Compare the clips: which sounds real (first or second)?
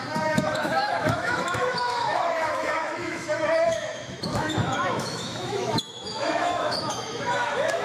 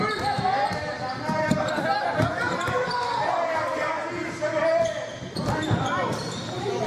second